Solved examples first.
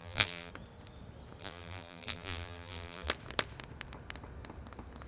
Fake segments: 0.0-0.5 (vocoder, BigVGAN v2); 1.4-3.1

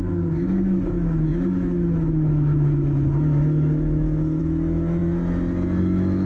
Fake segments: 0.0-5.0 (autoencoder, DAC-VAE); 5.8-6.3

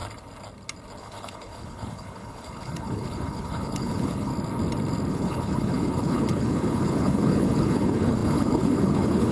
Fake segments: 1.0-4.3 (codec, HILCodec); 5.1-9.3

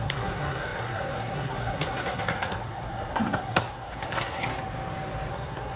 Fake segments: 0.0-4.5 (codec, SNAC); 5.3-5.8